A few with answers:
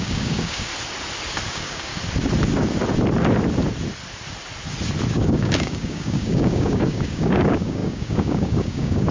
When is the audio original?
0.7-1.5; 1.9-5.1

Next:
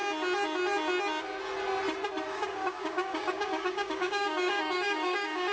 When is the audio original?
0.0-2.3

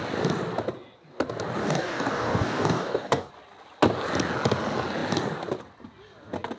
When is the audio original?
0.0-1.6; 3.3-6.6